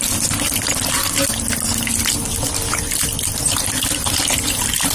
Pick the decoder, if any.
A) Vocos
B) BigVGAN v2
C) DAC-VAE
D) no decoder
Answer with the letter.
D